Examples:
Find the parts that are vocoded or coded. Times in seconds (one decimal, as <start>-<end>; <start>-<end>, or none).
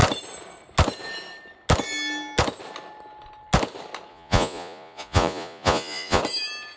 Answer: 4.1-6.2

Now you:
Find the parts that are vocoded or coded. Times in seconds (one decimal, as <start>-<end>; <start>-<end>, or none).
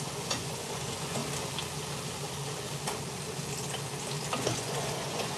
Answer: 0.0-1.2; 4.4-5.4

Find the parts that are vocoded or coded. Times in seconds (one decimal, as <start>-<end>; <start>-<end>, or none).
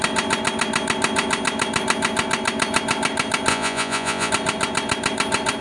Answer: 3.5-4.3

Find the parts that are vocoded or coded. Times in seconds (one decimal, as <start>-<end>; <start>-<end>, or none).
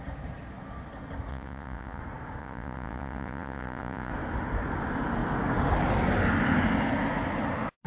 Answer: 1.3-2.0; 2.4-4.1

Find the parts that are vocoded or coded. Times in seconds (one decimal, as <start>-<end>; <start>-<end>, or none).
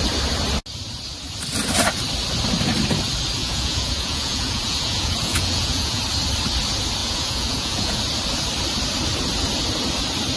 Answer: 3.4-6.0; 7.0-8.0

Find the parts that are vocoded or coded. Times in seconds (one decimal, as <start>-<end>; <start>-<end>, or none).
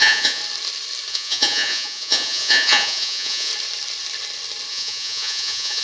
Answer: 0.0-0.4; 1.1-3.5; 4.7-5.8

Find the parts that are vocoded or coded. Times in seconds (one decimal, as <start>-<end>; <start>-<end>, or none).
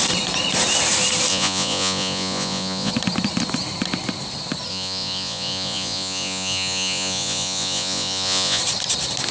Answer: 1.3-2.9; 4.7-8.6